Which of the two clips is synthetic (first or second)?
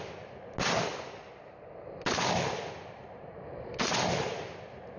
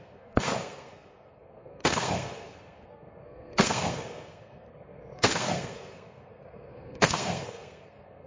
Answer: second